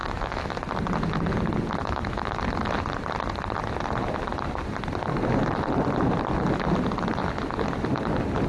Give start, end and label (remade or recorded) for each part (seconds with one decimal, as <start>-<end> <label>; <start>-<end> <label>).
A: 0.0-0.7 remade; 0.7-1.8 recorded; 1.8-2.4 remade; 2.4-8.5 recorded